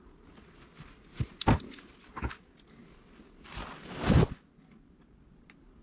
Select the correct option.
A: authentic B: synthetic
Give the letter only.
A